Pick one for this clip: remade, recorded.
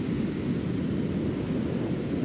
recorded